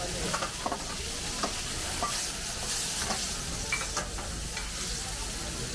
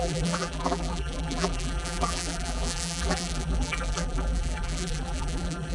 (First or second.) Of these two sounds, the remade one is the second